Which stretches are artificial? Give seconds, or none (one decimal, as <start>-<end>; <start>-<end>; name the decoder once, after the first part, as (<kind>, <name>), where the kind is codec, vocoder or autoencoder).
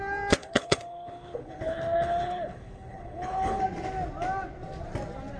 0.4-3.6 (codec, HILCodec)